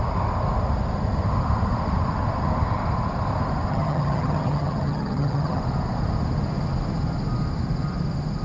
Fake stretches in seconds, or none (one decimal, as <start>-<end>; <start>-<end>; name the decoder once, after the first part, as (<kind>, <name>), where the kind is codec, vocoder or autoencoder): 3.7-5.6 (vocoder, HiFi-GAN)